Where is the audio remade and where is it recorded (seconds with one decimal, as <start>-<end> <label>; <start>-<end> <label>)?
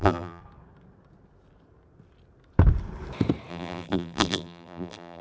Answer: 0.0-0.4 remade; 0.4-3.5 recorded; 3.5-5.2 remade